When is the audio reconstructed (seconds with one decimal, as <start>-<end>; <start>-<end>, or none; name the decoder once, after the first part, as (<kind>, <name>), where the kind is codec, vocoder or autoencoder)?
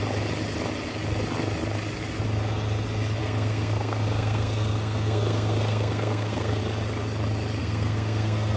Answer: 3.2-6.6 (codec, SNAC); 7.6-8.6